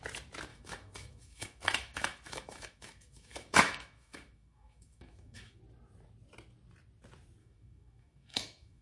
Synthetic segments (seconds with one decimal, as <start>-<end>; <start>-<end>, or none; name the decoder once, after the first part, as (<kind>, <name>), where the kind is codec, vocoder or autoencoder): 0.5-5.6 (autoencoder, DAC-VAE); 7.4-8.8